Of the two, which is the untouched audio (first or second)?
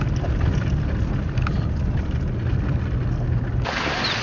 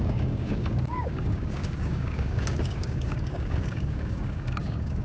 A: first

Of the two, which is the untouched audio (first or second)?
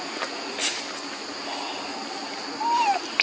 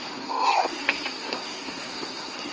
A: first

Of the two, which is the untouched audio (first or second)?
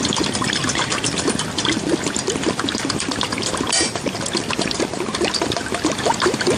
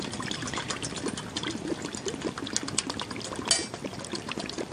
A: second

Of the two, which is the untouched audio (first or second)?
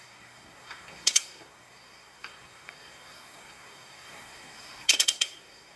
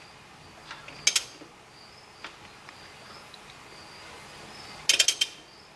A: second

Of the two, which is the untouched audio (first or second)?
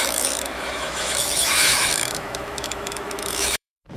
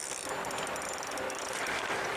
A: second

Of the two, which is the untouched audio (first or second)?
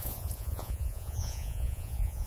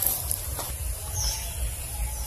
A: second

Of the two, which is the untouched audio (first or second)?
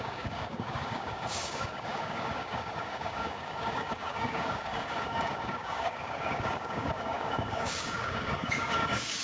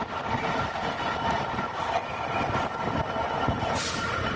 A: second